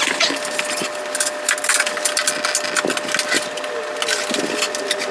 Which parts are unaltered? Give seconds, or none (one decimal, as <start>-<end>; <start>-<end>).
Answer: 0.0-5.1